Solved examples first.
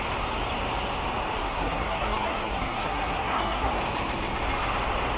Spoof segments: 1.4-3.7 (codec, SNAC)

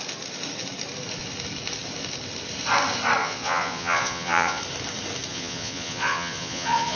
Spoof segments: 3.2-4.6 (vocoder, Vocos); 5.3-7.0

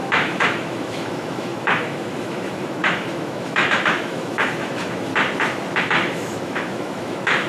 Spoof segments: 0.0-5.1 (autoencoder, DAC-VAE); 5.8-7.5

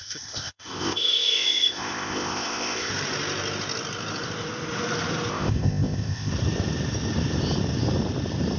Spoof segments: 0.0-2.9 (codec, ZipCodec); 5.3-6.3

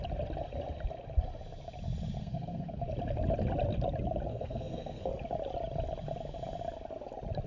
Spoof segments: 2.2-2.8 (codec, SNAC); 4.3-5.1